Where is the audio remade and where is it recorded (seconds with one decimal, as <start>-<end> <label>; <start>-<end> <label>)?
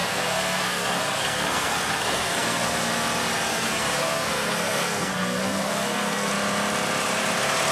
0.0-2.9 remade; 2.9-3.5 recorded; 3.5-6.3 remade; 6.3-7.7 recorded